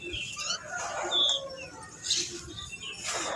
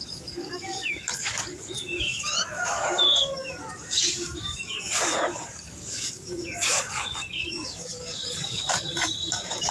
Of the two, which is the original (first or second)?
first